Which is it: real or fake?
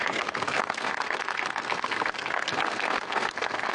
fake